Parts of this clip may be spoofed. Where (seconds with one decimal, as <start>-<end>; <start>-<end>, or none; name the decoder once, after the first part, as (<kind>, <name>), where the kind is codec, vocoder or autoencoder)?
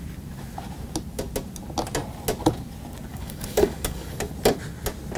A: 3.1-4.3 (codec, DAC)